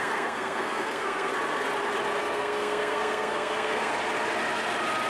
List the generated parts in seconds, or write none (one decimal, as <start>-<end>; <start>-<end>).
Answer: 0.0-1.3; 2.2-3.9